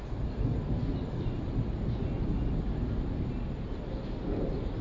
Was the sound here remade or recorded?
recorded